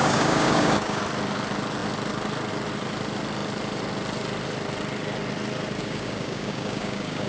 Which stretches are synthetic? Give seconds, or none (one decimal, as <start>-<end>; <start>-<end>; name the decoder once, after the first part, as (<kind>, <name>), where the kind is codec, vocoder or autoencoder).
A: 0.0-1.0 (codec, DAC); 5.8-7.3